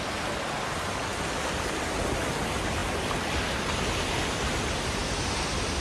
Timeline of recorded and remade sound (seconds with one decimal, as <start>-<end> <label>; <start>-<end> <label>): 0.0-5.8 recorded